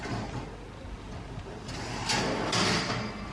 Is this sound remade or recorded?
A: recorded